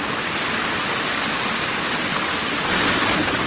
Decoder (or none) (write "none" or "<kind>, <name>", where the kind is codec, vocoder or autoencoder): none